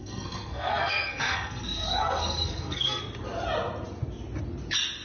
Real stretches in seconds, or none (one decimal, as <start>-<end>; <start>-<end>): 3.0-5.0